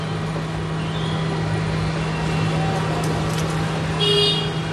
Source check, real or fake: real